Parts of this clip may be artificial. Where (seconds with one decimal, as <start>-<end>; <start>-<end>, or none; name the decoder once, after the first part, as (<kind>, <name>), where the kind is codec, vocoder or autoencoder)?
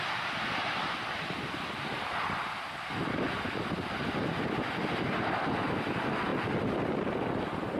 none